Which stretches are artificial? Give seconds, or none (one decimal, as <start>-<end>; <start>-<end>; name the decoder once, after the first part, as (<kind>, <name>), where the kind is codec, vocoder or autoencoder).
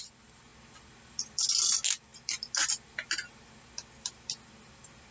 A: none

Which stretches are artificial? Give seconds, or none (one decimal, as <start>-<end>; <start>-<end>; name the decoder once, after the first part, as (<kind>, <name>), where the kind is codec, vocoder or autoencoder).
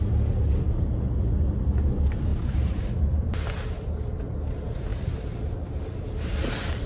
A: 2.3-3.0 (vocoder, BigVGAN v2)